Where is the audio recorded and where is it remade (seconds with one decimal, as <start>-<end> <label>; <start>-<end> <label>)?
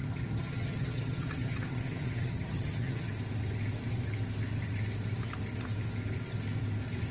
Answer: 0.0-3.1 remade; 3.1-7.1 recorded